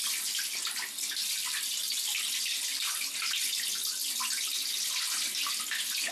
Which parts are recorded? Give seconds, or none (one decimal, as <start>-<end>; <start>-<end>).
0.0-1.2; 1.7-2.7; 3.3-4.0; 4.8-6.1